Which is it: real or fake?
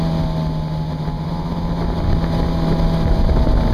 real